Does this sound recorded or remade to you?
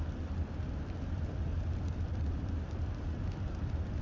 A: recorded